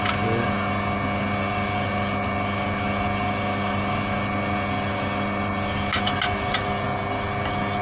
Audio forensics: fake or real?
real